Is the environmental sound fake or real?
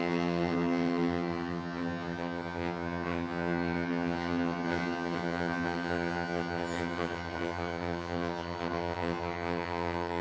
fake